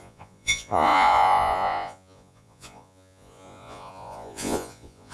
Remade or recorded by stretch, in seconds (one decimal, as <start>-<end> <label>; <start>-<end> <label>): 0.0-5.1 remade